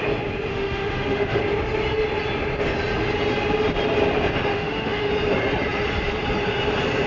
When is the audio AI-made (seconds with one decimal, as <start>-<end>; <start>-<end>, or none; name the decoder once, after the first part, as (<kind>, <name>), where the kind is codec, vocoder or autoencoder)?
0.5-1.4 (autoencoder, DAC-VAE); 4.5-5.1